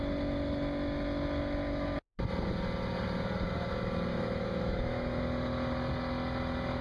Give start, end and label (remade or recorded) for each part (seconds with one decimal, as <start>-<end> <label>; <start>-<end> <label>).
0.0-4.1 recorded; 4.1-5.2 remade; 5.2-6.8 recorded